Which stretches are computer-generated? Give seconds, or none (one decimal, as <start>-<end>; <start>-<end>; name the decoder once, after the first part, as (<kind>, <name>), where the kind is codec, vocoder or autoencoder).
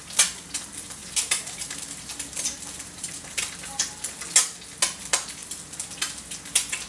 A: 1.0-3.4 (vocoder, BigVGAN v2)